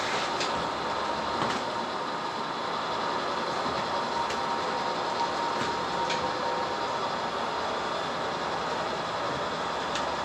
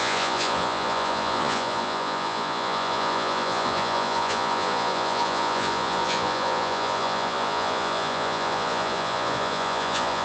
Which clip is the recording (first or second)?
first